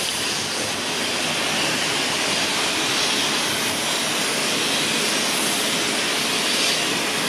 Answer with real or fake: real